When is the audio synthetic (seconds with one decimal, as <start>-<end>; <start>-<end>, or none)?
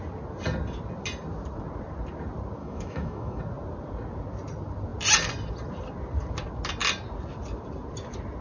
2.6-3.4